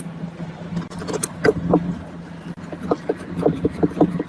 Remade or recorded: recorded